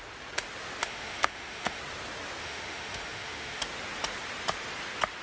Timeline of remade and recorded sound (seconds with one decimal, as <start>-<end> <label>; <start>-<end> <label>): 0.0-0.8 recorded; 0.8-1.8 remade; 1.8-2.4 recorded; 2.4-3.6 remade; 3.6-5.2 recorded